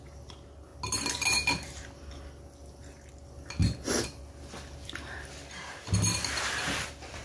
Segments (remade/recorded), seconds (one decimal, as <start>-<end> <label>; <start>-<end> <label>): 0.0-7.2 recorded